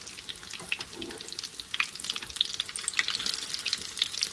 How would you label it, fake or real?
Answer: real